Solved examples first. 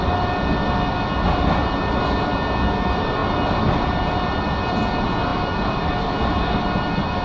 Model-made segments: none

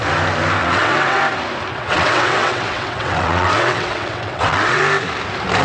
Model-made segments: 0.6-1.2; 1.7-4.8

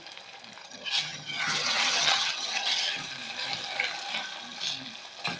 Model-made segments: 0.6-3.0

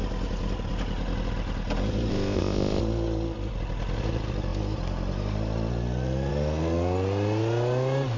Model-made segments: 2.1-2.8

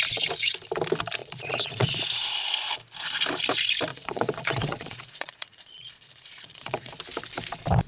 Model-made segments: 1.2-2.0; 3.9-6.9

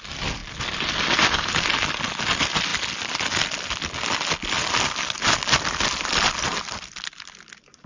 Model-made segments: none